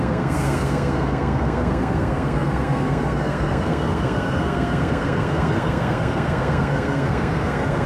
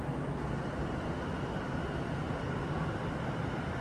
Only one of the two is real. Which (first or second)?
second